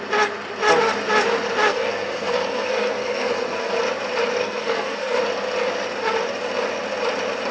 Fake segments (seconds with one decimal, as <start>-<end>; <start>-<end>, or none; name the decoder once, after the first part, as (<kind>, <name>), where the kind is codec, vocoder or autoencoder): 1.7-3.8 (codec, SNAC); 4.4-5.2